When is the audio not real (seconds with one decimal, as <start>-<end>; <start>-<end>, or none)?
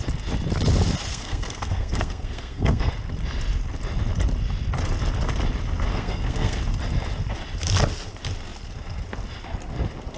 1.1-2.9; 5.9-6.6